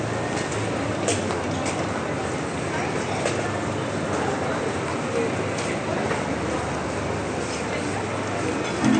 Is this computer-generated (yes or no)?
no